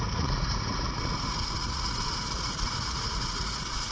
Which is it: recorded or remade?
remade